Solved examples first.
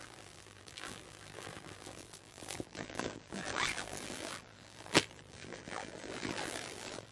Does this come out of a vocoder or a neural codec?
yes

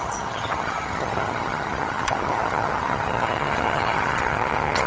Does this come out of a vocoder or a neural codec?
yes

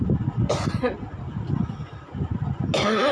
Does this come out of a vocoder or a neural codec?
no